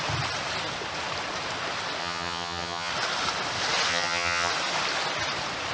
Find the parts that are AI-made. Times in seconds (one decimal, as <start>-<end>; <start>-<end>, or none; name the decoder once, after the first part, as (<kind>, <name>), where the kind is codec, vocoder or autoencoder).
2.0-2.9 (vocoder, HiFi-GAN); 3.9-4.5